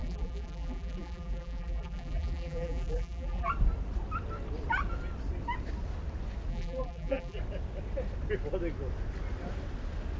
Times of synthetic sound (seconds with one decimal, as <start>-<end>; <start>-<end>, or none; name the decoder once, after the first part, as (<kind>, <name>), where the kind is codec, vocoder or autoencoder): 0.0-3.5 (vocoder, BigVGAN v2); 6.5-7.4